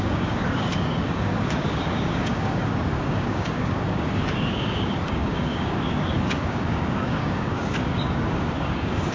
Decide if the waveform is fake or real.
fake